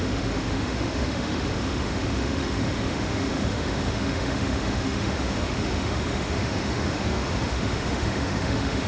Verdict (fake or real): fake